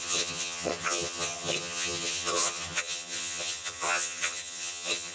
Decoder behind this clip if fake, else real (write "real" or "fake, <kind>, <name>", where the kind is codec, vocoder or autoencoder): fake, vocoder, HiFi-GAN